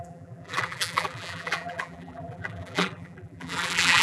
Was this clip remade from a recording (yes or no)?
yes